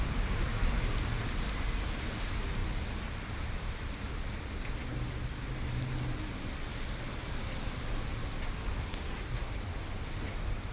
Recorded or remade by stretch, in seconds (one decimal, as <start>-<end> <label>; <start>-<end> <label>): 0.0-8.9 recorded; 8.9-9.5 remade; 9.5-10.7 recorded